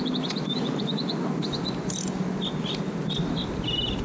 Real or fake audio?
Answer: real